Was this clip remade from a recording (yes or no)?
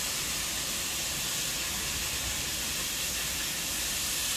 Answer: no